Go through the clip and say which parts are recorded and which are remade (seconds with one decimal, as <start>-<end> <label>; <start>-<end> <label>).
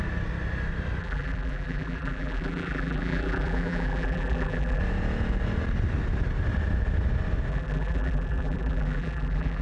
0.0-1.0 recorded; 1.0-4.8 remade; 4.8-7.5 recorded; 7.5-9.6 remade